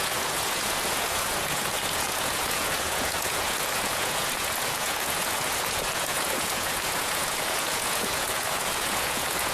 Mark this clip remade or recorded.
remade